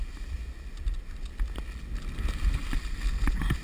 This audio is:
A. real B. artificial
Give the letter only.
A